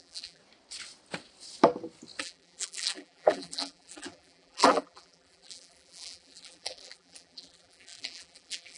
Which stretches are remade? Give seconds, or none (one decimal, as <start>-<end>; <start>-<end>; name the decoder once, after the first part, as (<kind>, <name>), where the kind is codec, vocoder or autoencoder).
0.0-0.4 (vocoder, BigVGAN v2); 2.2-8.8